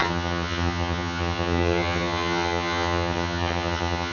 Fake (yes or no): yes